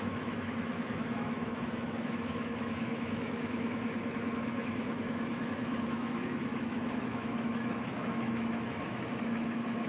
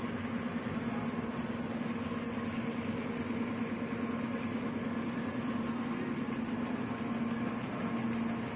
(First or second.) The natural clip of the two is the second